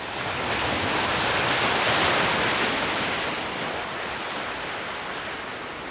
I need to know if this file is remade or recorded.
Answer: recorded